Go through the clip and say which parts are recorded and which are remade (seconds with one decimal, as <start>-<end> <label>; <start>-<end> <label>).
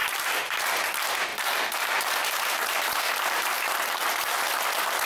0.0-0.6 remade; 0.6-1.3 recorded; 1.3-4.4 remade; 4.4-5.1 recorded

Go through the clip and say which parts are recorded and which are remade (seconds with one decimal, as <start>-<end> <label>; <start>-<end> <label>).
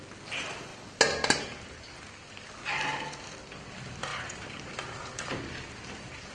0.0-0.7 remade; 0.7-2.3 recorded; 2.3-6.3 remade